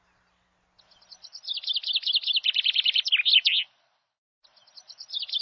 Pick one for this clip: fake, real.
real